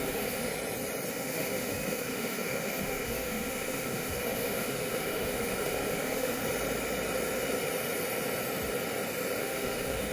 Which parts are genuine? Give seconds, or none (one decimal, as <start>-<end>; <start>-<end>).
0.5-1.1; 6.4-9.4